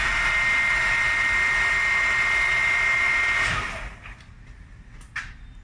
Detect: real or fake real